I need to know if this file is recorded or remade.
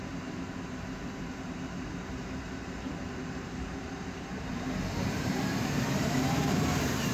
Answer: remade